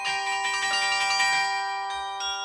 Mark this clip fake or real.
real